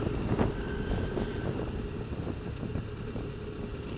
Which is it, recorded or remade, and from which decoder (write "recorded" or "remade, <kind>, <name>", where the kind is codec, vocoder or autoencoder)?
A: recorded